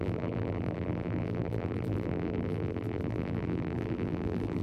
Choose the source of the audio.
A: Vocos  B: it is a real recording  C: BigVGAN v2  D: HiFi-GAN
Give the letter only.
C